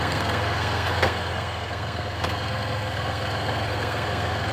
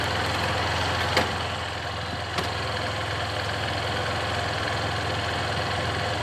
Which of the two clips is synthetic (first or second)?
first